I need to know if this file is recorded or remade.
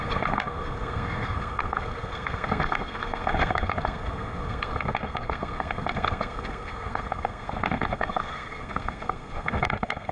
remade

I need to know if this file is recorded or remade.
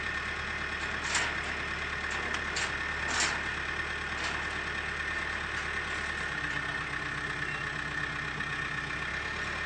recorded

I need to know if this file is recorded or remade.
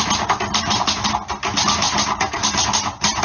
recorded